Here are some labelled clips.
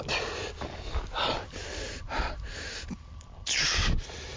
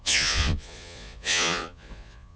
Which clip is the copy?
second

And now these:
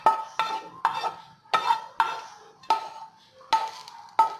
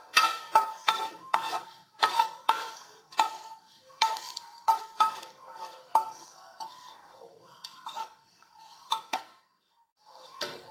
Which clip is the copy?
second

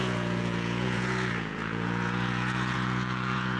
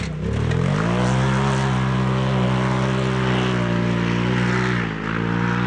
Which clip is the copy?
first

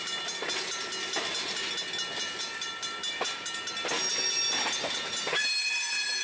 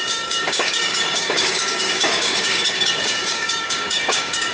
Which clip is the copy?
second